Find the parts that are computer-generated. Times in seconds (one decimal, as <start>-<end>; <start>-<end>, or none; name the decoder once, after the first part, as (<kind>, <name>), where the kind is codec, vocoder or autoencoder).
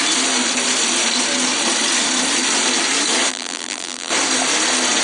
3.3-4.1 (vocoder, BigVGAN v2)